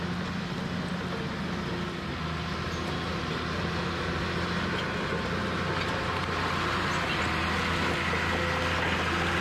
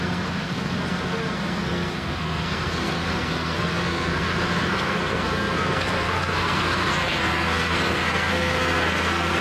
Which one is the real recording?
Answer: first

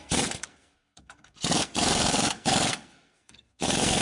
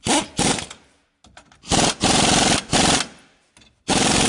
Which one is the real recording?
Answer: second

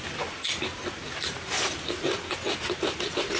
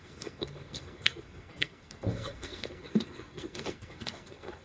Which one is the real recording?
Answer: first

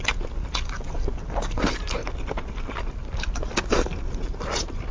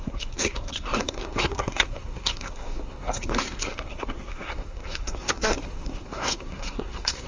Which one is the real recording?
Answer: first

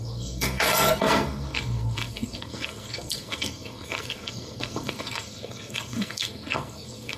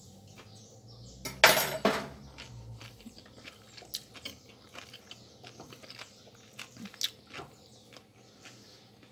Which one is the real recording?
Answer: second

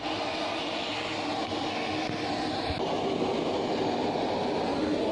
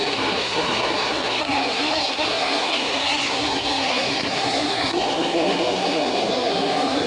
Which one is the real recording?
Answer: first